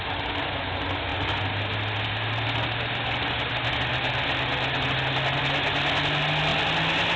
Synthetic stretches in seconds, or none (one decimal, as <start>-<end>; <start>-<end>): none